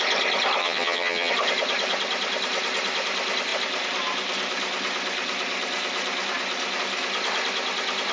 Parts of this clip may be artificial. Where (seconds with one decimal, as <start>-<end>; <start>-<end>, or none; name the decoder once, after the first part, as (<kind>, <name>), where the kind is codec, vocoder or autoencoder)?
0.6-1.3 (vocoder, HiFi-GAN)